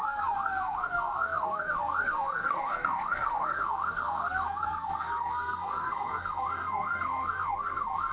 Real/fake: fake